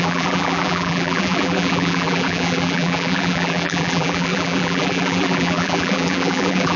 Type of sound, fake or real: fake